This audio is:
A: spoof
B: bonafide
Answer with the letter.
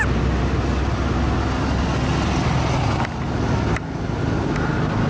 B